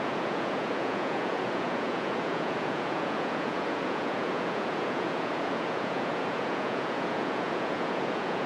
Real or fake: fake